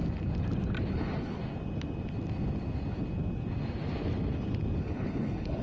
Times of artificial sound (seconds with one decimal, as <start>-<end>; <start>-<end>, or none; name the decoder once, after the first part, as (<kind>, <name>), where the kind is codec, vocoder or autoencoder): 0.9-1.4 (codec, HILCodec); 4.8-5.6